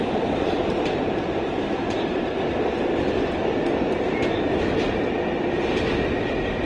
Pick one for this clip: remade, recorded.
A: recorded